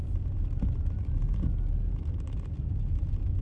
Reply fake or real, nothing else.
real